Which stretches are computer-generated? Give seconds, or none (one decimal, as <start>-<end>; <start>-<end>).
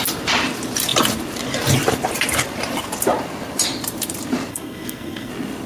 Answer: 4.5-5.3